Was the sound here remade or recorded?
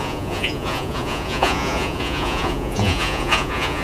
remade